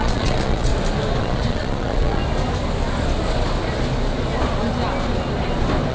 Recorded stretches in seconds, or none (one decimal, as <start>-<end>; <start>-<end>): 0.7-1.2; 2.2-5.9